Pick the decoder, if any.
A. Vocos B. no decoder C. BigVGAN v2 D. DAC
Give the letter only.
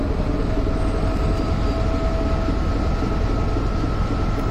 B